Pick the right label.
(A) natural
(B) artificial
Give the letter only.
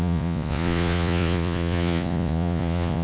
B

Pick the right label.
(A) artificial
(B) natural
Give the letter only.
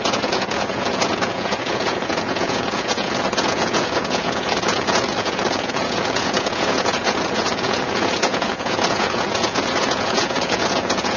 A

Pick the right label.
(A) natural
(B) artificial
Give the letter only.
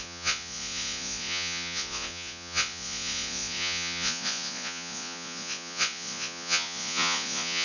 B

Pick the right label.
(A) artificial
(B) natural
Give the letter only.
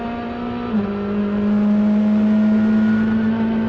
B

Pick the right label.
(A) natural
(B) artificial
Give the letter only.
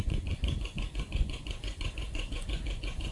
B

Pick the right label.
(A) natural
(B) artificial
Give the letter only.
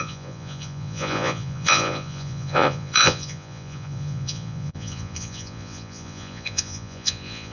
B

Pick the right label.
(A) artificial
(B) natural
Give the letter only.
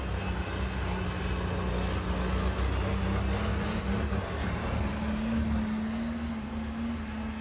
B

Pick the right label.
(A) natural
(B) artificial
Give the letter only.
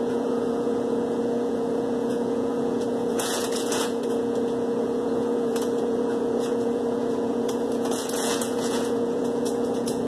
B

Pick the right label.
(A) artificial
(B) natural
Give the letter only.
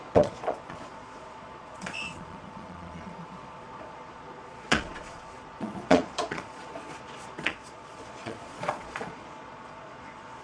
A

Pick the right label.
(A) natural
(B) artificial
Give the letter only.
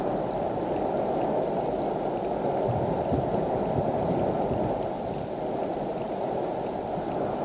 A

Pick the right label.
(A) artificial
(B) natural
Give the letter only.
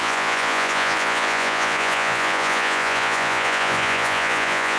A